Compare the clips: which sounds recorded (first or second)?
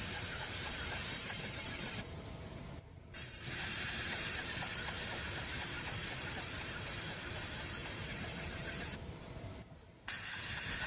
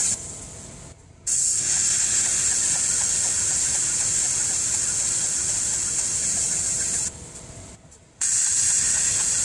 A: second